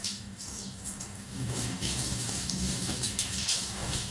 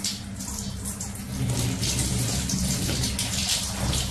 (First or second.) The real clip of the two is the second